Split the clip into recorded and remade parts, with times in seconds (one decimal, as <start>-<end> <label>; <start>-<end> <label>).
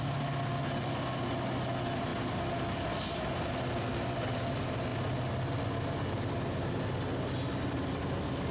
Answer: 0.0-8.5 recorded